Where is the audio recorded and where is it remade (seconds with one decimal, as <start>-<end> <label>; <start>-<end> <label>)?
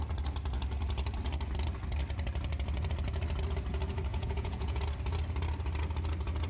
0.0-4.1 recorded; 4.1-4.8 remade; 4.8-6.5 recorded